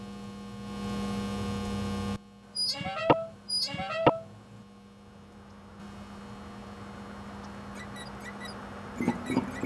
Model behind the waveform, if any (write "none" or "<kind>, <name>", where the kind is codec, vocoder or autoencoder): none